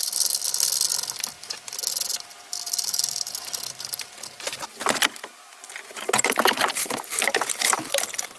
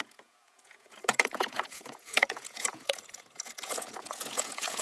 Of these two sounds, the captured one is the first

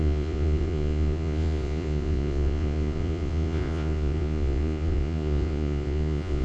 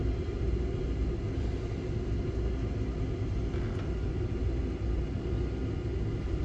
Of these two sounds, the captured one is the second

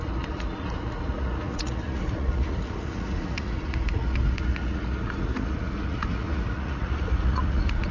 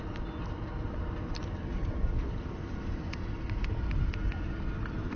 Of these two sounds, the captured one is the second